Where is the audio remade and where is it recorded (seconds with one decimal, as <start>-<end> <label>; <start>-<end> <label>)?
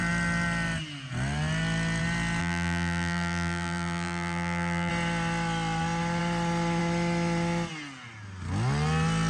0.0-2.4 recorded; 2.4-4.9 remade; 4.9-9.3 recorded